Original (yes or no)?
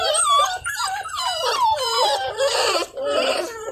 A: no